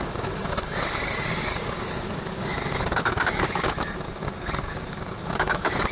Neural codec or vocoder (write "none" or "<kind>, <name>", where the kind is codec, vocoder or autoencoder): codec, DAC